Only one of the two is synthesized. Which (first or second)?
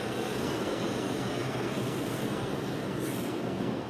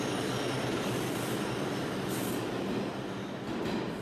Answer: first